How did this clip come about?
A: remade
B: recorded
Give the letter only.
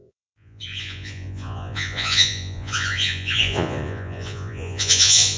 A